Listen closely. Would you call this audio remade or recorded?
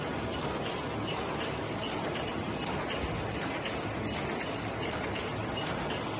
recorded